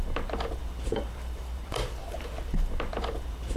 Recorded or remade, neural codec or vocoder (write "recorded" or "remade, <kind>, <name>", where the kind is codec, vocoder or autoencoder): remade, vocoder, BigVGAN v2